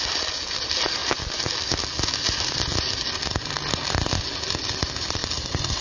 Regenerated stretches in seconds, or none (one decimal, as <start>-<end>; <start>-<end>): none